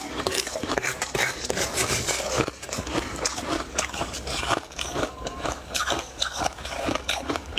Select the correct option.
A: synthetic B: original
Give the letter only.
A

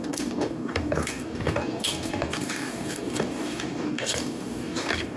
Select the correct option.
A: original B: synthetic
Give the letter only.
B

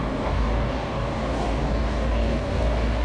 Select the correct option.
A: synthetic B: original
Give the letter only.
A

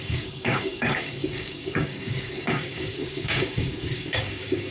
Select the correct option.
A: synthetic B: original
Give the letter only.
A